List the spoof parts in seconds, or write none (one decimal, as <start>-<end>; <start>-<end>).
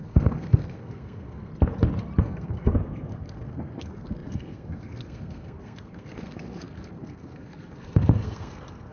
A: 0.0-1.5; 2.2-8.9